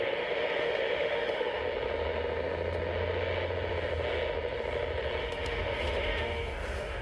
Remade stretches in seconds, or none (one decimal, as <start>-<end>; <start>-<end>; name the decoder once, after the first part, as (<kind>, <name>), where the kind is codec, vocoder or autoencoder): 0.0-1.6 (autoencoder, DAC-VAE); 5.2-7.0